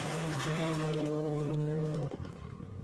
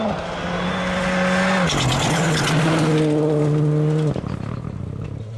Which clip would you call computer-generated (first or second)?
first